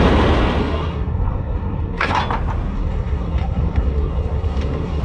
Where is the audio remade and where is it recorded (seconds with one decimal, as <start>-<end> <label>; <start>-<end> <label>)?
0.0-0.6 recorded; 0.6-2.2 remade; 2.2-2.7 recorded; 2.7-5.0 remade